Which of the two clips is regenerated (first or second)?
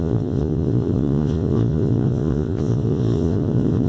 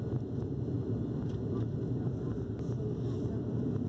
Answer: first